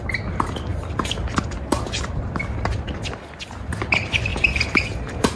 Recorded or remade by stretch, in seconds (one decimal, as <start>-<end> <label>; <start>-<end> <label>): 0.0-4.3 recorded; 4.3-5.4 remade